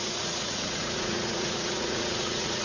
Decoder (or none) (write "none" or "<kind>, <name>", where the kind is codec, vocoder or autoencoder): vocoder, Vocos